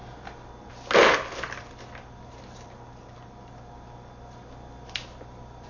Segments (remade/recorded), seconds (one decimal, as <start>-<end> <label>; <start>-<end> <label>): 0.0-5.7 recorded